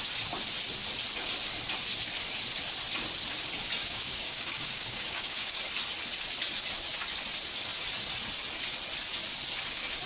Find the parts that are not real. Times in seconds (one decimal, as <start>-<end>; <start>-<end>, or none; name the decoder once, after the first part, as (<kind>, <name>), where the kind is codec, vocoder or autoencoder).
3.8-5.6 (codec, DAC)